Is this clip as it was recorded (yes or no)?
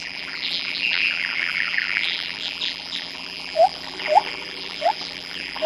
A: no